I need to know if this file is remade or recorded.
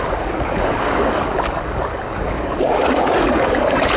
remade